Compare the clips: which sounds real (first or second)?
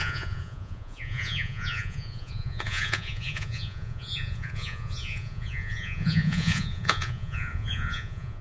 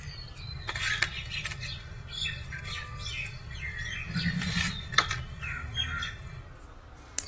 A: second